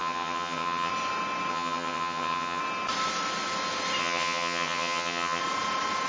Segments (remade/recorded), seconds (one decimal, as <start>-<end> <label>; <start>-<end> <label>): 0.0-0.9 remade; 0.9-1.5 recorded; 1.5-2.6 remade; 2.6-4.0 recorded; 4.0-5.4 remade; 5.4-6.1 recorded

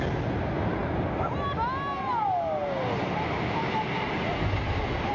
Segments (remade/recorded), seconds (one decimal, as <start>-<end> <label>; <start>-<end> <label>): 0.0-5.1 recorded